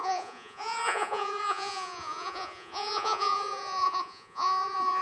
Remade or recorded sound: remade